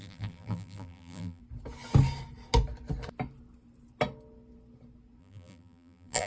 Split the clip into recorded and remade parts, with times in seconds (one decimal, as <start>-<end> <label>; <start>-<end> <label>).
0.0-1.4 remade; 1.4-5.2 recorded; 5.2-6.3 remade